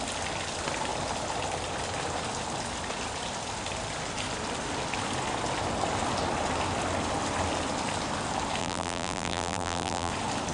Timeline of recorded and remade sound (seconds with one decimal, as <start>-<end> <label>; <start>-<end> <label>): 0.0-8.6 recorded; 8.6-10.1 remade; 10.1-10.5 recorded